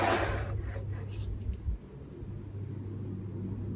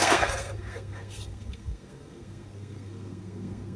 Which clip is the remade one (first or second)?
second